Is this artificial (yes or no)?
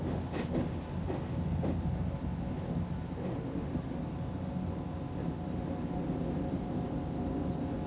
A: no